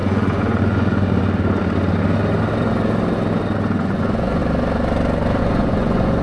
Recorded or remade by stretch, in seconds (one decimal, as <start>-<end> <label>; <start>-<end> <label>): 0.0-1.2 remade; 1.2-3.8 recorded; 3.8-4.4 remade; 4.4-5.4 recorded; 5.4-6.2 remade

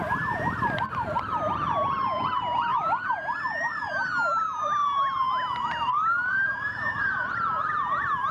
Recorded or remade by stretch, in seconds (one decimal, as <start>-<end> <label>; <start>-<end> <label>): 0.0-2.7 recorded; 2.7-3.9 remade; 3.9-6.3 recorded; 6.3-7.3 remade; 7.3-8.3 recorded

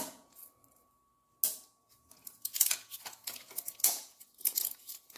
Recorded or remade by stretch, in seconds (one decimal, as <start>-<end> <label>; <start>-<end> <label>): 0.0-0.4 remade; 0.4-1.9 recorded; 1.9-5.2 remade

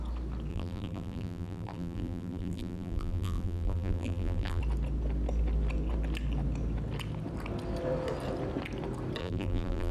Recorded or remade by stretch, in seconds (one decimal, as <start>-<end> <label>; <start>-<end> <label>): 0.0-0.5 recorded; 0.5-4.6 remade; 4.6-9.2 recorded; 9.2-9.9 remade